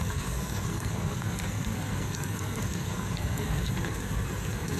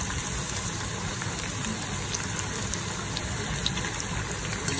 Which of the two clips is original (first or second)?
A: second